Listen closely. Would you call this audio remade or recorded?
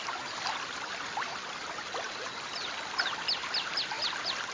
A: recorded